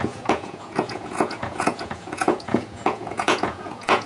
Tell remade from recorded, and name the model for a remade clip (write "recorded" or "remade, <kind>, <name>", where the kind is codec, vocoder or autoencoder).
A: remade, vocoder, Vocos